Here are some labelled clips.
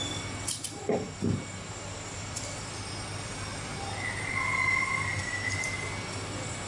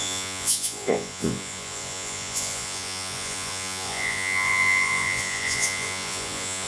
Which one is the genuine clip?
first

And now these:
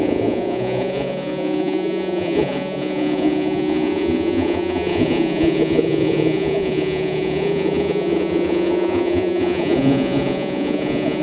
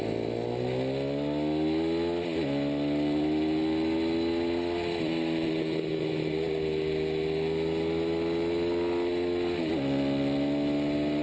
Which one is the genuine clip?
second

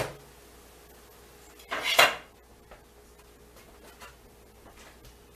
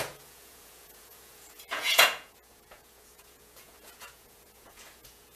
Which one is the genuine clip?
first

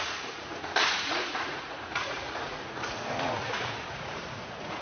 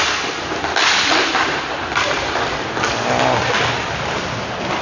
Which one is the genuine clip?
second